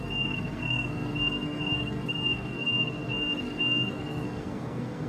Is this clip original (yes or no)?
no